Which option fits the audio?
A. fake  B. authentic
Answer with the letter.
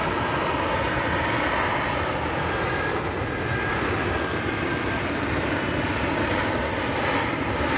B